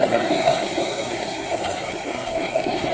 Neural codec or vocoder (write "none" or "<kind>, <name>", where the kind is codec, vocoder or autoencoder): codec, SNAC